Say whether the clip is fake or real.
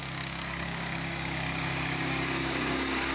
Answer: fake